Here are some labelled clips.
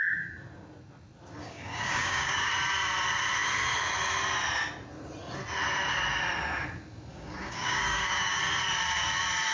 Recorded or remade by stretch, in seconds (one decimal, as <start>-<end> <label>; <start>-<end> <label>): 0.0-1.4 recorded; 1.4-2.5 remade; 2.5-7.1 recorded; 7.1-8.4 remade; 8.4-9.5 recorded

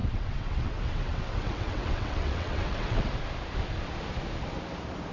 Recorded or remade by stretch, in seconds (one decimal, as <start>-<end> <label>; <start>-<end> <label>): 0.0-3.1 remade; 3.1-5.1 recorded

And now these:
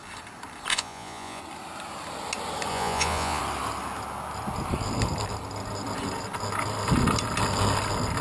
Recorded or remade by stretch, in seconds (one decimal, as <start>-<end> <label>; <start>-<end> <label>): 0.0-0.7 recorded; 0.7-1.4 remade; 1.4-2.7 recorded; 2.7-3.4 remade; 3.4-8.2 recorded